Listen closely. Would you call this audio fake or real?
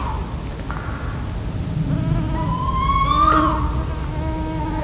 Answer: real